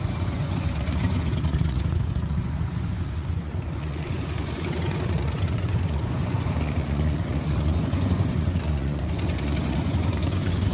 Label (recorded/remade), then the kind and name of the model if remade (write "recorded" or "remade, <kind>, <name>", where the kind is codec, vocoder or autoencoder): remade, vocoder, Vocos